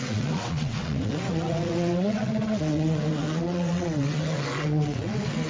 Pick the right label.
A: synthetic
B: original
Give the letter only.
A